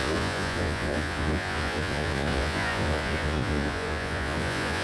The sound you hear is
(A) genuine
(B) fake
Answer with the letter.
B